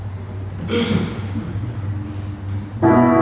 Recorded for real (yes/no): yes